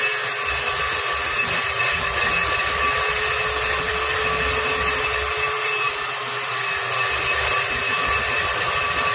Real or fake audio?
real